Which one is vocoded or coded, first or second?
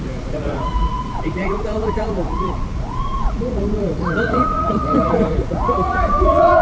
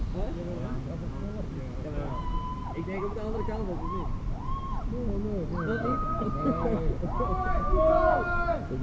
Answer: first